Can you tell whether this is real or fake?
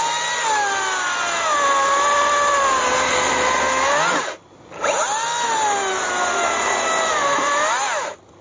real